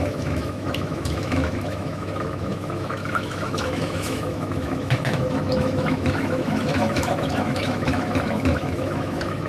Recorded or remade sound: remade